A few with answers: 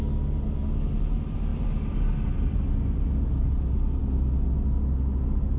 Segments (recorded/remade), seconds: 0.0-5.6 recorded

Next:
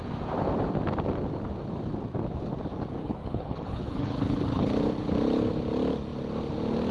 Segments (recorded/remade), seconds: 0.0-3.0 recorded; 3.0-4.7 remade; 4.7-6.9 recorded

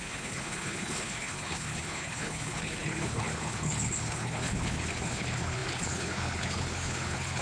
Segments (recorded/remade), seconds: 0.0-7.4 remade

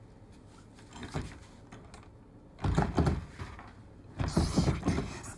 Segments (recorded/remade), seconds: 0.0-5.4 recorded